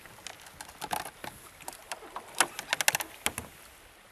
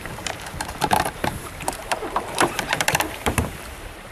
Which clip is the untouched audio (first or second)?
first